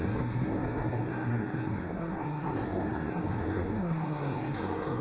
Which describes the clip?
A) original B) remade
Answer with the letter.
B